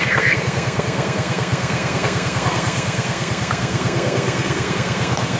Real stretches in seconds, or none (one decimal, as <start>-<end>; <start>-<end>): none